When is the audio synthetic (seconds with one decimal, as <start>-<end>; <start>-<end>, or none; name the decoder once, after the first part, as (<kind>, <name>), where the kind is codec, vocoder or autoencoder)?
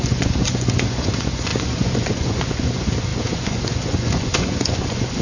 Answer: 0.0-5.2 (vocoder, Vocos)